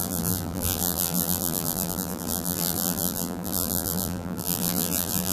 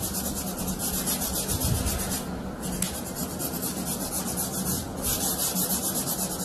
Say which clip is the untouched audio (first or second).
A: second